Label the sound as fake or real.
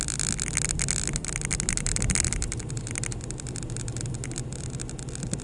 real